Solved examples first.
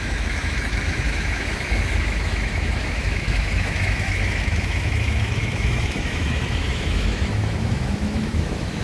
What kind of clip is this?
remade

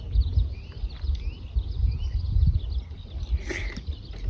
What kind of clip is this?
recorded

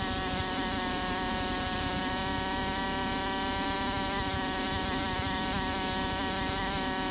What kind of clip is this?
recorded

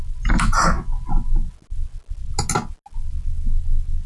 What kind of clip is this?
recorded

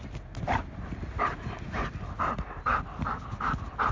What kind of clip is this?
recorded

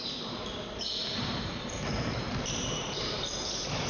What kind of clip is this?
remade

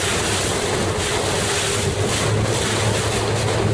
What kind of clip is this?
recorded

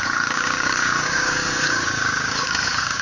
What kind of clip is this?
remade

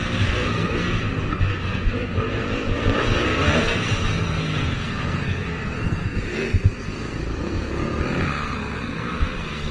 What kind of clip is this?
remade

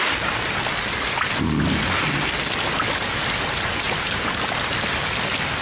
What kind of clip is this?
recorded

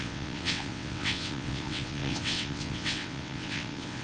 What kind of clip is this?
remade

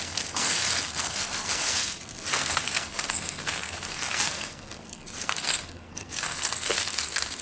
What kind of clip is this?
remade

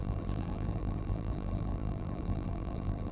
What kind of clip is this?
remade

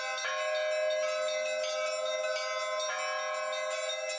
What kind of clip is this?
recorded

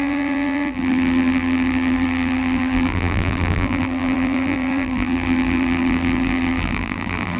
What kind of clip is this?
remade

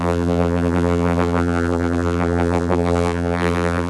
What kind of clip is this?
remade